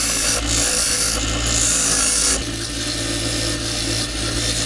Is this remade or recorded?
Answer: recorded